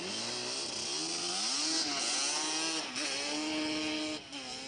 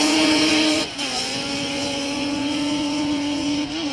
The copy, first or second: second